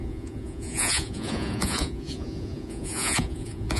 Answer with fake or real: fake